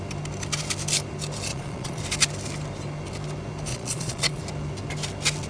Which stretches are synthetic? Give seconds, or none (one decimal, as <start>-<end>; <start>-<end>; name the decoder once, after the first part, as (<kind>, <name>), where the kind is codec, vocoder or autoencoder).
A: 1.5-2.0 (vocoder, Vocos); 3.7-4.4